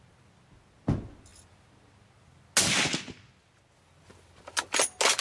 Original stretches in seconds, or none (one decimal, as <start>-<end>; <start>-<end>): 0.0-5.2